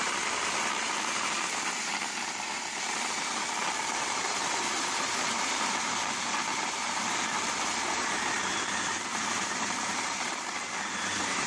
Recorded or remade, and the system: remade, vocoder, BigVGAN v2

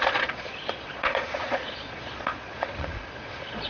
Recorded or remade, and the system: remade, vocoder, Vocos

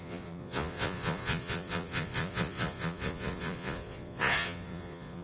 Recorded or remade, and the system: remade, vocoder, Vocos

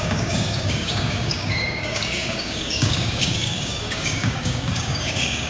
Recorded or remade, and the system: remade, codec, DAC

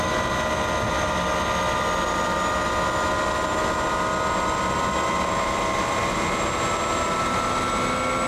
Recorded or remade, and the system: recorded